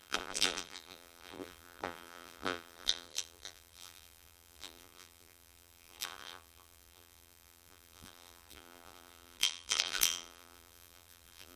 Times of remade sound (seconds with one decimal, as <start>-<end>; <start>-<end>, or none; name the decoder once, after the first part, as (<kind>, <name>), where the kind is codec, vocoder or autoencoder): 0.0-11.6 (vocoder, BigVGAN v2)